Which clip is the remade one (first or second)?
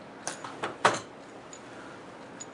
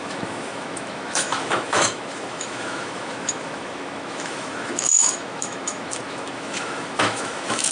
second